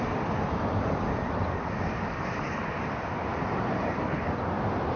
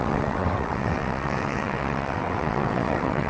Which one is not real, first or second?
second